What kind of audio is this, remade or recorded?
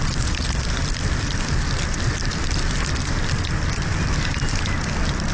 remade